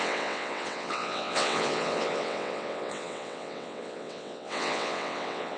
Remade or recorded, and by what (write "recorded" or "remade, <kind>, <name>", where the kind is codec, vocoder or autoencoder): remade, vocoder, WaveNeXt